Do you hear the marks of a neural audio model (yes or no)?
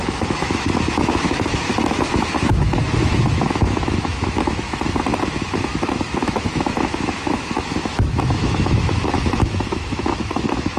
yes